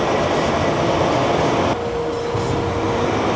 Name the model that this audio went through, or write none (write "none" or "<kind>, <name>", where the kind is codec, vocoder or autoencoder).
none